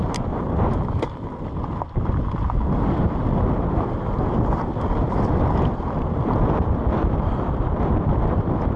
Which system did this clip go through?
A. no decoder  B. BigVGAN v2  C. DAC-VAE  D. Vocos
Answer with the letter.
A